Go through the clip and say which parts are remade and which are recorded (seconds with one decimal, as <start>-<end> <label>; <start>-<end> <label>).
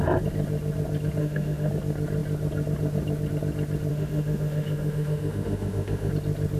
0.0-1.2 recorded; 1.2-1.7 remade; 1.7-3.9 recorded; 3.9-6.1 remade; 6.1-6.6 recorded